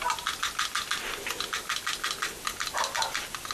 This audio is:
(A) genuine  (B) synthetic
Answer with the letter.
A